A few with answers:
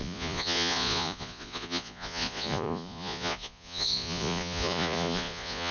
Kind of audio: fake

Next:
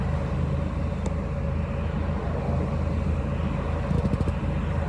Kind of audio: real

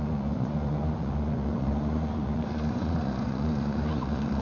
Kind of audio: fake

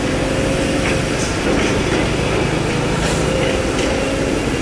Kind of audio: real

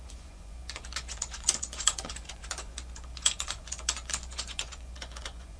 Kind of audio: fake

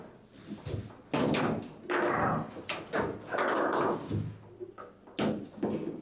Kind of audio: real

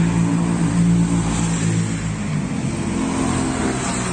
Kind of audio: real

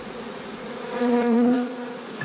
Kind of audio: fake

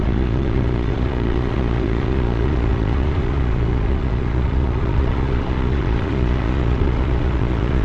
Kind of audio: fake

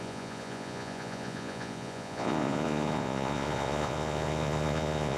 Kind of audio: fake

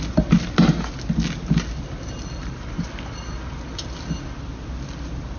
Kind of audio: real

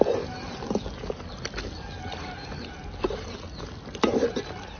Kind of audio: real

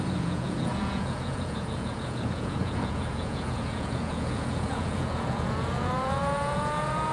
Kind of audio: fake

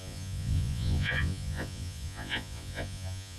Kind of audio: fake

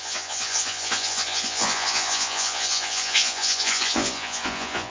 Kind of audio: fake